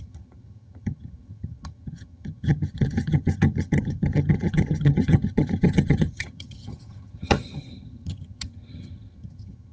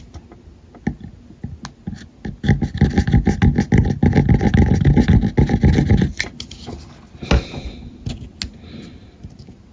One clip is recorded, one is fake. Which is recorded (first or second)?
second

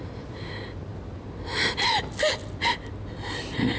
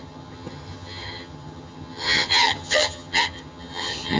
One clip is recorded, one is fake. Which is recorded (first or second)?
first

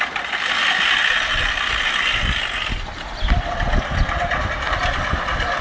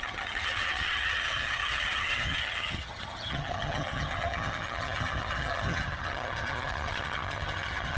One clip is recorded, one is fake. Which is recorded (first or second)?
first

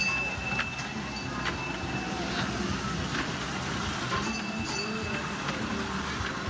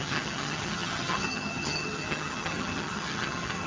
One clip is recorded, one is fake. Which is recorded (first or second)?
first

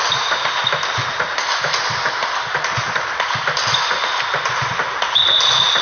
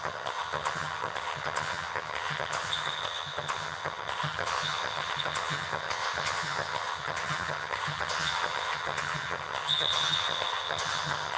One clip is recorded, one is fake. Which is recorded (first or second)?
first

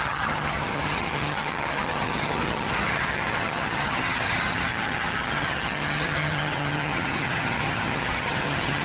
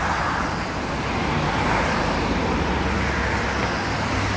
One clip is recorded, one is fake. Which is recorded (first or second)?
second